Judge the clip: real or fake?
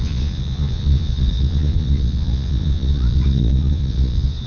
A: fake